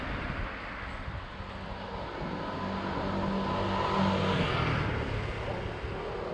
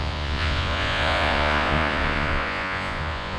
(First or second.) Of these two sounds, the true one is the first